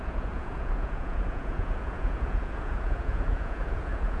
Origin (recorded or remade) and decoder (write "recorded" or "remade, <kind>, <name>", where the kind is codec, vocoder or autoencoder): remade, vocoder, Vocos